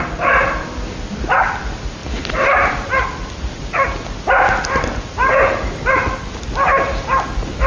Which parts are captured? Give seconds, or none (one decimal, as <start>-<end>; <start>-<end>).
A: 0.0-7.7

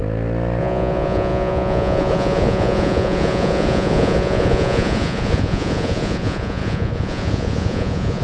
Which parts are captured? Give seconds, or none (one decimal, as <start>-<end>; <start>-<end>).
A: 0.0-0.6

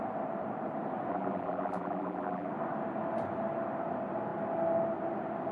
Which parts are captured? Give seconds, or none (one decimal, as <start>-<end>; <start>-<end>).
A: 0.0-1.1; 2.5-5.5

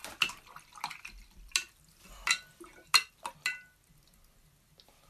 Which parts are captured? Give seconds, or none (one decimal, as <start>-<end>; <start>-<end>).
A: 0.0-5.1